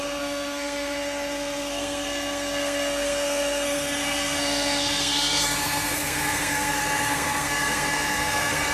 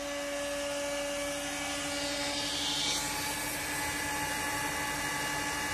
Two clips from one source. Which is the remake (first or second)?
first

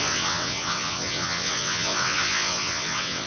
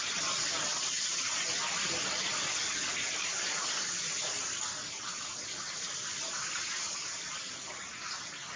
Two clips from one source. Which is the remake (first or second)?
first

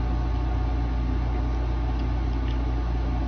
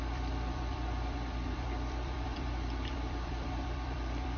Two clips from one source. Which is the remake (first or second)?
second